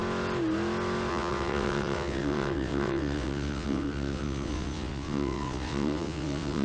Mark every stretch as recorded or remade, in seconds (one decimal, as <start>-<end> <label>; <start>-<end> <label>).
0.0-1.1 recorded; 1.1-6.6 remade